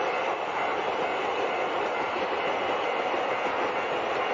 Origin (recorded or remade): recorded